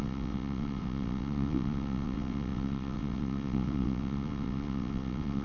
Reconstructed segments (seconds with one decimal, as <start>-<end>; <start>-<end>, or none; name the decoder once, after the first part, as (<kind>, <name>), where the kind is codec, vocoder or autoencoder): 0.0-5.4 (vocoder, WaveNeXt)